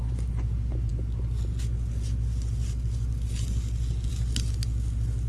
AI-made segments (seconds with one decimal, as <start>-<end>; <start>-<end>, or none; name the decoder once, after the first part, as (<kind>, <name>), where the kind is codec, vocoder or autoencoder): none

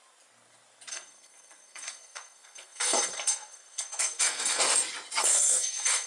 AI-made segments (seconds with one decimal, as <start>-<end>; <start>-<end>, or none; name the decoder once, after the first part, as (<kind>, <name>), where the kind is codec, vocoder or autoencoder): 0.9-4.6 (codec, SNAC); 5.2-6.1

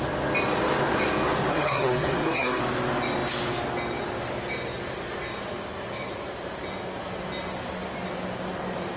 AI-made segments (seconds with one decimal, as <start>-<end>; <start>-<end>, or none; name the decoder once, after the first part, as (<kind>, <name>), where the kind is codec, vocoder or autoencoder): 1.5-2.6 (codec, SNAC)

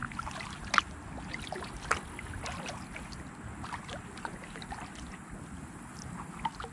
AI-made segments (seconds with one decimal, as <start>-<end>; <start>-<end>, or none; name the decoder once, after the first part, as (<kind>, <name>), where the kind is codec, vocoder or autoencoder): none

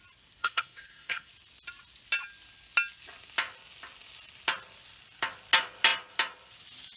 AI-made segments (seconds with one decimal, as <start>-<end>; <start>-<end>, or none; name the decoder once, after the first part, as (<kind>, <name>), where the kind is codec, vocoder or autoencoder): 0.4-1.3 (codec, SNAC)

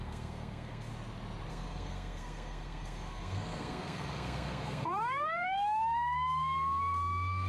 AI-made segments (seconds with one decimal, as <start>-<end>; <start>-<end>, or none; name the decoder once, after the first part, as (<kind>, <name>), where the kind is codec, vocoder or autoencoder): 0.0-0.9 (codec, SNAC); 1.5-7.5

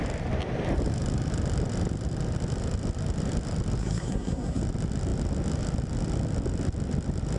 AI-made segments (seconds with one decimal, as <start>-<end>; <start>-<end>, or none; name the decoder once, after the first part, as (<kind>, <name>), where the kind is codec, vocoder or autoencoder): 3.8-4.6 (codec, SNAC)